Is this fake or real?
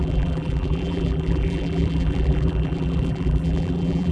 fake